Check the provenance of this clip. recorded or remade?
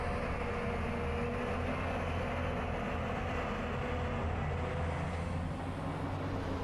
recorded